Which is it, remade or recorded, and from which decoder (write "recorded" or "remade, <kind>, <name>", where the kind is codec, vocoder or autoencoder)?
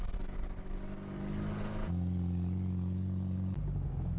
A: recorded